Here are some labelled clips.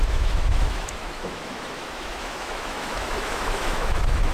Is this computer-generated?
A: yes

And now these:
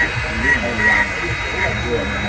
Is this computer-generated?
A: no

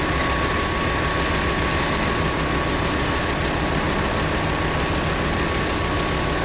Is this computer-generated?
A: no